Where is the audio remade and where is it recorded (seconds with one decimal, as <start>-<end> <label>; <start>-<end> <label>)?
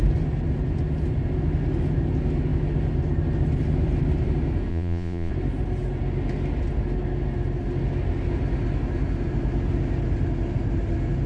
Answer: 0.0-4.7 recorded; 4.7-5.3 remade; 5.3-11.3 recorded